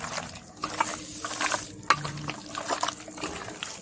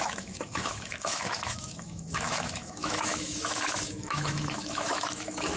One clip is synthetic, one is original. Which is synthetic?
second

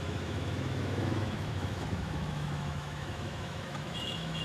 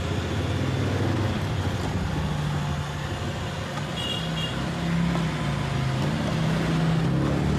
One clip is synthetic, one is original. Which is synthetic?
first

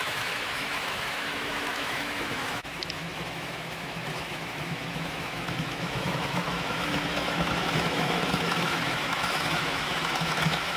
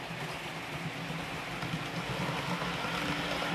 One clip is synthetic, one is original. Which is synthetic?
first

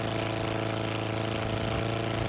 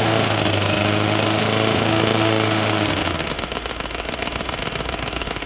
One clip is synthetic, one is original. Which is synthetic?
second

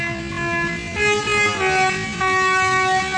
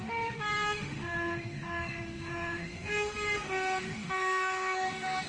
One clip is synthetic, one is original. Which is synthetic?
second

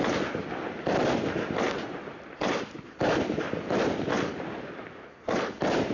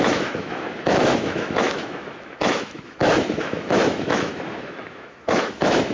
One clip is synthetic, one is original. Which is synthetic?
second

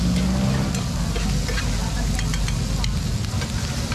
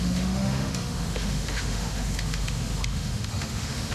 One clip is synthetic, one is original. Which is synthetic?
second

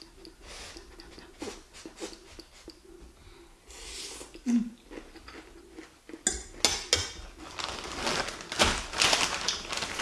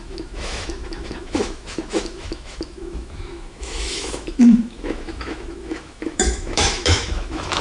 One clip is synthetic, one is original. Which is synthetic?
second